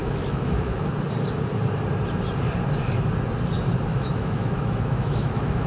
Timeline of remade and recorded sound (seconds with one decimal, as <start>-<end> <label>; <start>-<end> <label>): 0.0-0.9 remade; 0.9-3.9 recorded; 3.9-5.7 remade